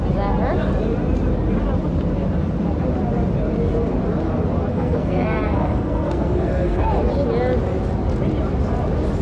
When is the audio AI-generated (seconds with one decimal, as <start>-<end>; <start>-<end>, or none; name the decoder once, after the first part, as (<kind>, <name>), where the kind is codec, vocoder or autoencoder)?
4.7-6.9 (codec, SNAC)